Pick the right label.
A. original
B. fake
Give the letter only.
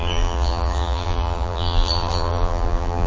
B